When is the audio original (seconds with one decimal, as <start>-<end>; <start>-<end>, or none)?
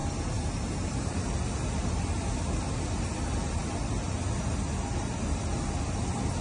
0.0-6.4